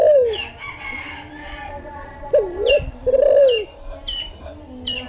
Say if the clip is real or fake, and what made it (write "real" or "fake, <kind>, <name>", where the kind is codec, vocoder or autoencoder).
real